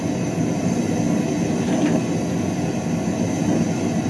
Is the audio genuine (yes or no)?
yes